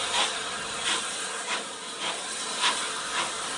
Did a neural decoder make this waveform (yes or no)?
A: no